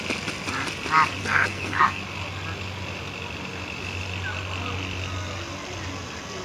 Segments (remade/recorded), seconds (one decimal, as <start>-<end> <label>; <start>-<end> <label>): 0.0-1.2 recorded; 1.2-2.0 remade; 2.0-6.4 recorded